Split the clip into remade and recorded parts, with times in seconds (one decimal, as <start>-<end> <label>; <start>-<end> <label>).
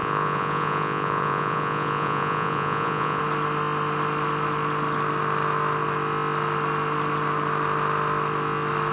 0.0-3.2 remade; 3.2-8.9 recorded